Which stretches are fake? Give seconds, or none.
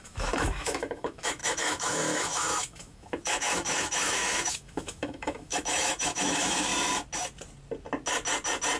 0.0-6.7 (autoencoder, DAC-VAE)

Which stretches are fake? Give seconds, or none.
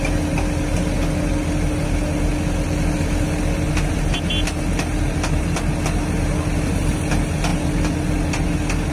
none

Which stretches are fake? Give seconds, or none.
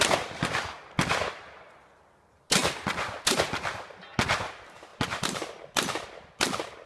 none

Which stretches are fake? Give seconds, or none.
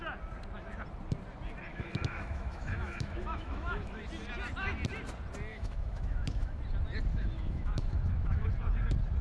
1.7-4.0 (autoencoder, DAC-VAE); 5.5-6.6; 7.1-8.5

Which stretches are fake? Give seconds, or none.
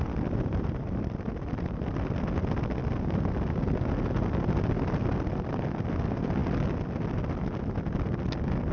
none